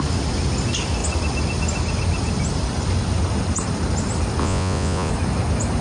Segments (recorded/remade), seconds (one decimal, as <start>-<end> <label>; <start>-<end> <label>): 0.0-4.4 recorded; 4.4-5.1 remade; 5.1-5.8 recorded